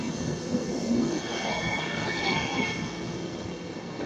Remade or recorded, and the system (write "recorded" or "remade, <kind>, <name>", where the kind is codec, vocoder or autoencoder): remade, codec, SNAC